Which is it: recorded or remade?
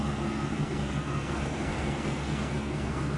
remade